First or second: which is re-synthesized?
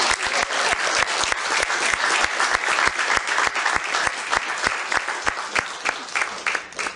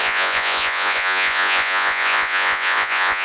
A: second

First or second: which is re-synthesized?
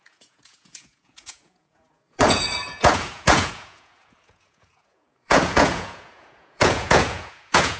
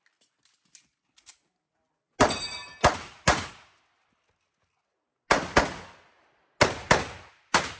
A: first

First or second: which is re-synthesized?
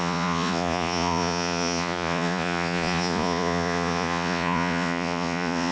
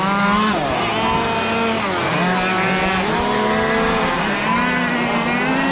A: first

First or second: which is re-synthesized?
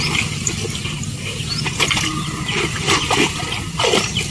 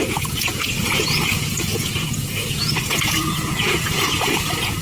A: second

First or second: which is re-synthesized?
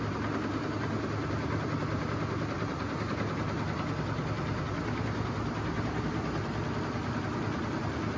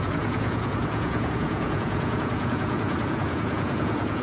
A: second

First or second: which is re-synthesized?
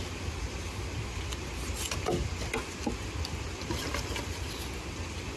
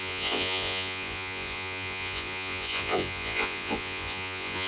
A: second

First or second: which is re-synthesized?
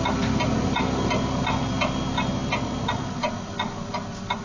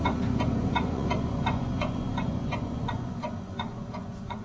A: second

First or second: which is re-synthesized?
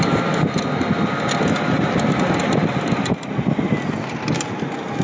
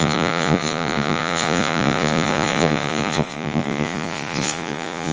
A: second